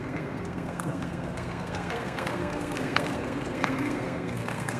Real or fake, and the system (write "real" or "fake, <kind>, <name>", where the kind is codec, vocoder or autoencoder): fake, codec, SNAC